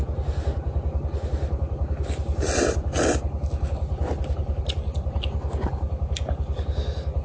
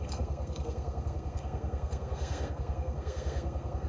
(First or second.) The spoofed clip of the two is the second